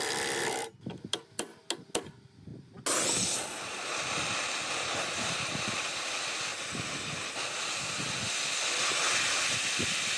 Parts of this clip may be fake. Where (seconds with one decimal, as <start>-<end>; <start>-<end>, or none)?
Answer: none